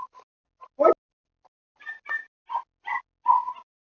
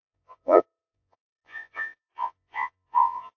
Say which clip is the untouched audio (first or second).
first